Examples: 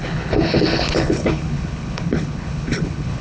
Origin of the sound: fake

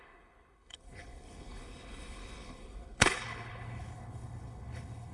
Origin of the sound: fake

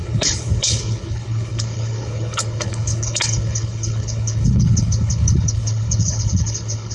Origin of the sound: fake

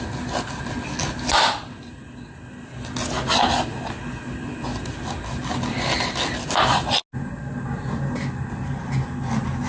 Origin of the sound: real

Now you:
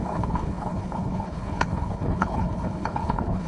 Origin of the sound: fake